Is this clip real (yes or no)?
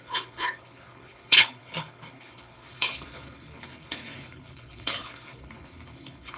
no